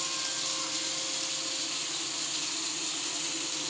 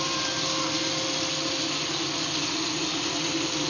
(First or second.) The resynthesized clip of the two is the second